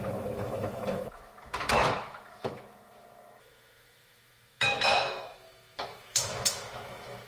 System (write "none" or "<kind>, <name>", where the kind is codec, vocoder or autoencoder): autoencoder, DAC-VAE